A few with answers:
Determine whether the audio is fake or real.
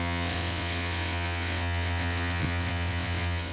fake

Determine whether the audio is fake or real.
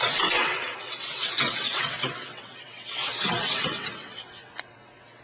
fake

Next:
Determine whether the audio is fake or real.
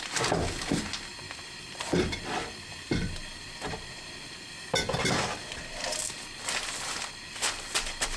real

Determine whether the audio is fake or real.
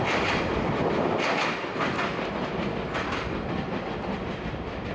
real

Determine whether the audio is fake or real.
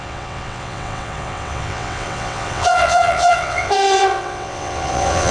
fake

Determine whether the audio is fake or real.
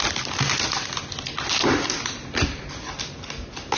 real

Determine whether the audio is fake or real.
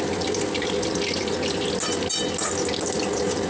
real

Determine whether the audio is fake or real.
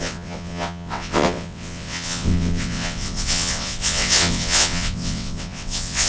fake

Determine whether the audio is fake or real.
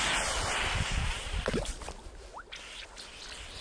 real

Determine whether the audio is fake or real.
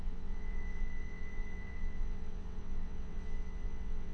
fake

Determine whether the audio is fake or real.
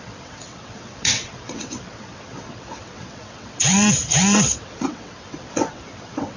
fake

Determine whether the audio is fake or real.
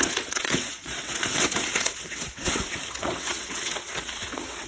fake